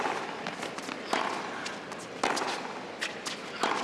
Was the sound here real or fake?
real